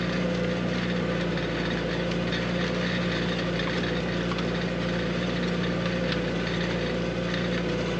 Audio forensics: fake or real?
real